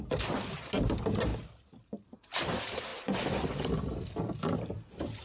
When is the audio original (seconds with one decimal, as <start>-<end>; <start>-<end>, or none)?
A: 1.3-1.8; 2.9-4.4